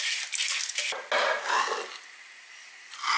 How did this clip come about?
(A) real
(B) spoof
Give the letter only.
A